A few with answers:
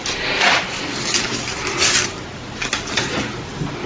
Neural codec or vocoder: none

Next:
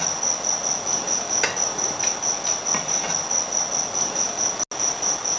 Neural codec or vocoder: none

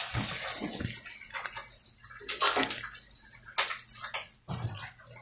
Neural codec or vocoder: none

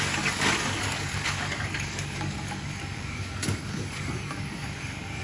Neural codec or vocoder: codec, DAC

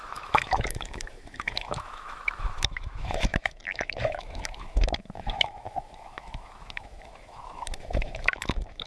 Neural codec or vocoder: autoencoder, DAC-VAE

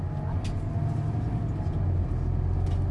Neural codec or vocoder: none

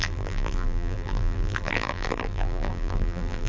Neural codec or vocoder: vocoder, BigVGAN v2